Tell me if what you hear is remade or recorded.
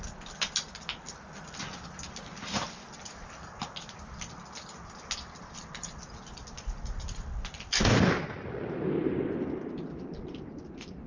recorded